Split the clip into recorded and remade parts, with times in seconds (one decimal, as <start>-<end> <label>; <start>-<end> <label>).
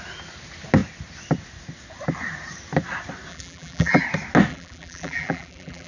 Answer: 0.0-3.3 recorded; 3.3-4.0 remade; 4.0-4.5 recorded; 4.5-5.9 remade